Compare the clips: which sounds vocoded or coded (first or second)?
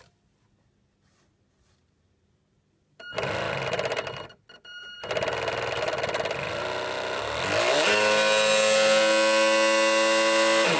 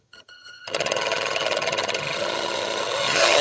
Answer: second